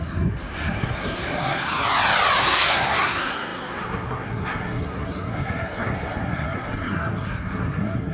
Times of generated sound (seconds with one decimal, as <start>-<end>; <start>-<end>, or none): 0.0-1.7; 2.4-8.1